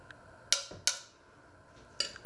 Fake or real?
real